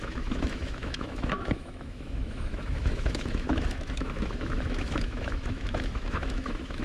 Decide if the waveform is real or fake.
fake